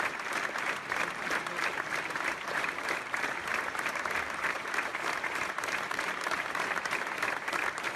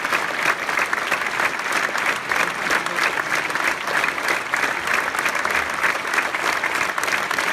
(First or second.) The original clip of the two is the second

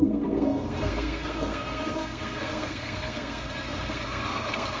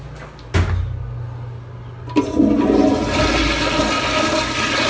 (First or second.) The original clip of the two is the second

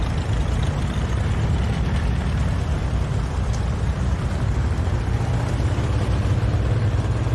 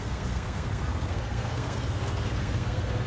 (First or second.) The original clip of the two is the first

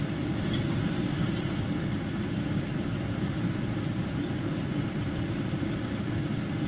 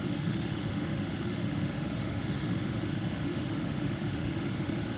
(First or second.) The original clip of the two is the first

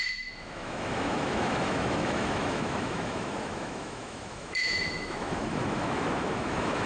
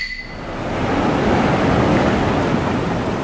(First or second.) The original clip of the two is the second